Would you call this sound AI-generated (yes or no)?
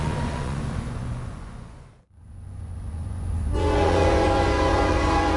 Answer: yes